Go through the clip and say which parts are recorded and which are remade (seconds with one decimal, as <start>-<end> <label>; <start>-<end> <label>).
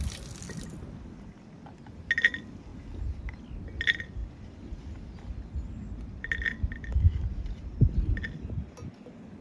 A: 0.0-9.4 recorded